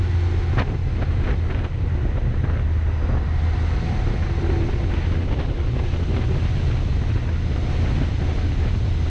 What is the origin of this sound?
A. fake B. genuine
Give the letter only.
B